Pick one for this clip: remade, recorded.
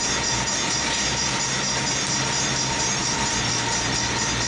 recorded